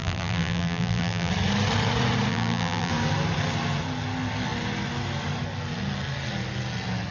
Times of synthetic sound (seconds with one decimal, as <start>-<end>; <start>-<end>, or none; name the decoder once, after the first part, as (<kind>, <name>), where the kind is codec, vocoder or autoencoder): 0.0-1.3 (vocoder, BigVGAN v2); 2.3-2.9